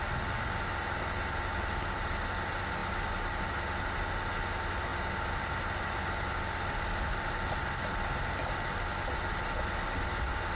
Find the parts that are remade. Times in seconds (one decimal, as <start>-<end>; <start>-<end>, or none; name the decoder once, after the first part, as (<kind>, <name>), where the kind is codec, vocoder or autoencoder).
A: none